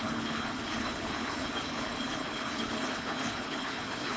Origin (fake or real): fake